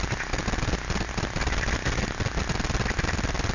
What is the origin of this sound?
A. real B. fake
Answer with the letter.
A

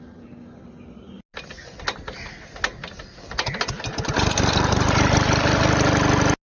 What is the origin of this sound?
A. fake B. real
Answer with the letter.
B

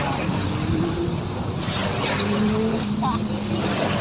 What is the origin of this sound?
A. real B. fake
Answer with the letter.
A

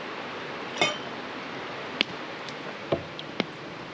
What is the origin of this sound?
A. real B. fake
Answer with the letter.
A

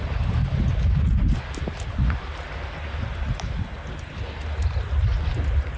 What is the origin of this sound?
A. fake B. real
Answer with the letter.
B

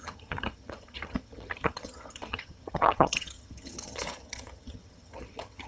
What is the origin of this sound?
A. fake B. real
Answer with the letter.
A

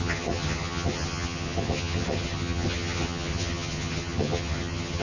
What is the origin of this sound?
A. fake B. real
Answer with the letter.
A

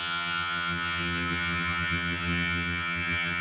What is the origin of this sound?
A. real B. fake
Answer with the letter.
B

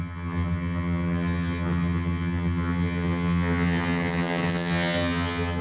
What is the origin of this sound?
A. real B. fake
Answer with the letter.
B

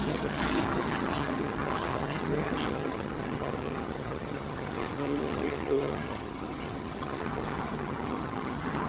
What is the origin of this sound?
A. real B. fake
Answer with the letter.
B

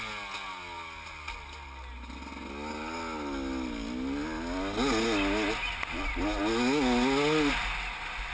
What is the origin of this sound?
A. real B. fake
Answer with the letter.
A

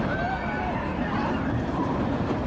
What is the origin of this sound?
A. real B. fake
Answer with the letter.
A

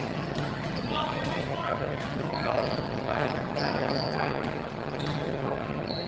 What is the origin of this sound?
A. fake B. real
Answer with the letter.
A